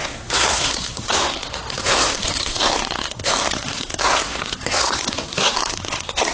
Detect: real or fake fake